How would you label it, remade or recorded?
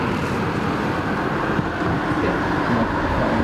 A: recorded